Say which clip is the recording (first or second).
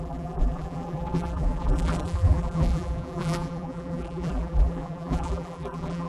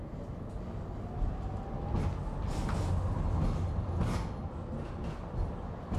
second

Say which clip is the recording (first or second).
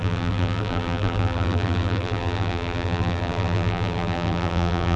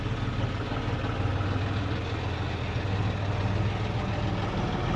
second